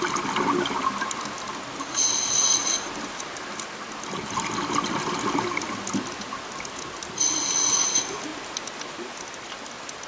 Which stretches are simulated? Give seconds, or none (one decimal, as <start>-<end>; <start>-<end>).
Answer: none